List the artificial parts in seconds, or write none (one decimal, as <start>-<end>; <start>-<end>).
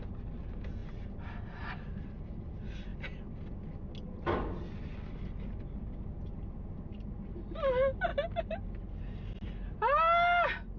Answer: none